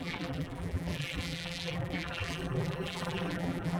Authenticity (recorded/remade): remade